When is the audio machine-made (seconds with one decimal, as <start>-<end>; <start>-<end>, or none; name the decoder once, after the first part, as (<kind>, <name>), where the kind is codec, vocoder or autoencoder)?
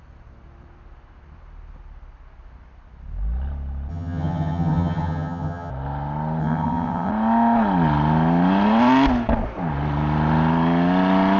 3.9-5.7 (vocoder, HiFi-GAN); 6.4-7.1